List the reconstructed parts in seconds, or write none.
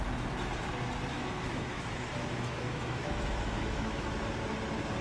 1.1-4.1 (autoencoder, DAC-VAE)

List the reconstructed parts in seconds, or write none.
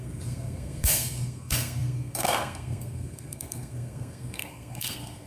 0.0-5.3 (codec, SNAC)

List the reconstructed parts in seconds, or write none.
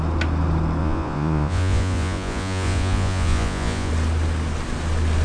0.8-3.9 (vocoder, Vocos)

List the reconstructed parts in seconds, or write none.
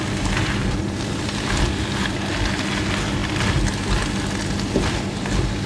0.6-1.8 (vocoder, BigVGAN v2)